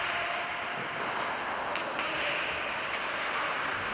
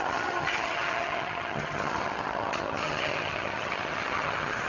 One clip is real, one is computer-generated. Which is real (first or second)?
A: first